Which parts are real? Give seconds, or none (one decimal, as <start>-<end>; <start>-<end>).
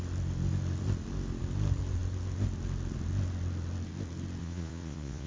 0.0-4.4